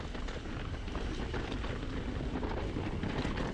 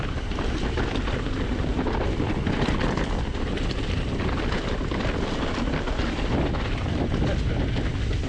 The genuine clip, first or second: first